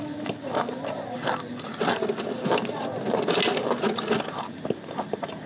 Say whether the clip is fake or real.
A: real